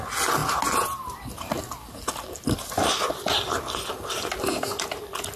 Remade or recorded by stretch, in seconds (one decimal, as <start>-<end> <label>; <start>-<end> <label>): 0.0-5.4 recorded